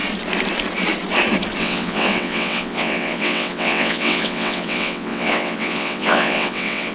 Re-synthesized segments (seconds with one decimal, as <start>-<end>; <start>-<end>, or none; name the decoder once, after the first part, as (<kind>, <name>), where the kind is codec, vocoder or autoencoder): 1.6-6.9 (vocoder, WaveNeXt)